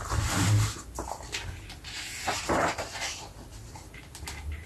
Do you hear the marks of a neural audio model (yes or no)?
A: no